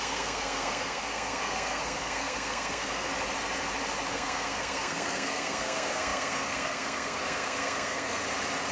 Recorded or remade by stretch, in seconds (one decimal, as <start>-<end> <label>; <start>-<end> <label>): 0.0-3.1 remade; 3.1-4.1 recorded; 4.1-8.2 remade; 8.2-8.7 recorded